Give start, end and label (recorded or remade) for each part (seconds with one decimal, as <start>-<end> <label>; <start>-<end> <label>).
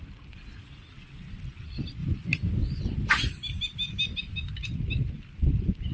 0.0-5.9 recorded